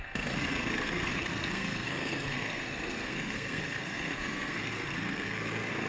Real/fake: fake